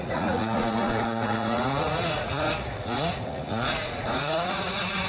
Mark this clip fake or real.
fake